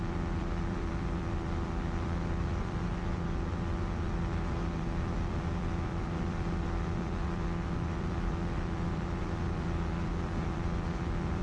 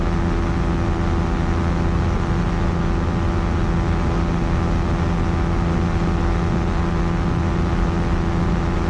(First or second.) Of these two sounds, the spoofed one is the first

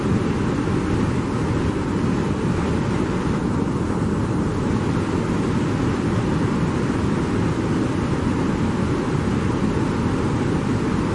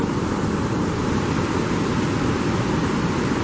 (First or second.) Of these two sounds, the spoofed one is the second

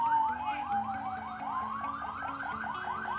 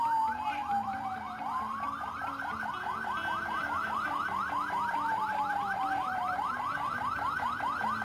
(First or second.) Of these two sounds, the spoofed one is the second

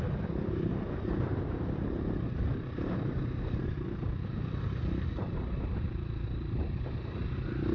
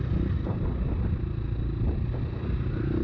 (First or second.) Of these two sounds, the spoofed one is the first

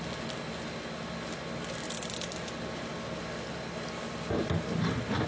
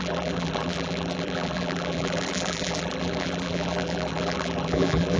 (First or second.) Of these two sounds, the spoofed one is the second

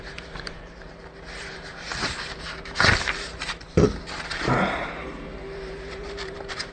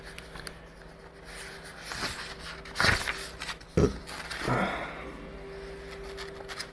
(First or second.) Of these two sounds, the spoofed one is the first